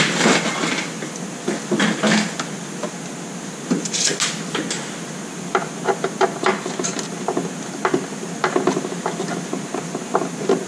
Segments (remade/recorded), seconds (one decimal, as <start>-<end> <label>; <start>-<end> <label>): 0.0-10.7 recorded